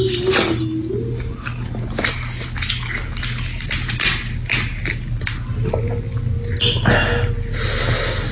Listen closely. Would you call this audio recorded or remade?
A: recorded